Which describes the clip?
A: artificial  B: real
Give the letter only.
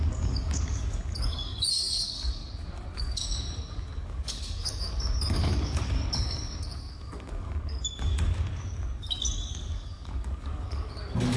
A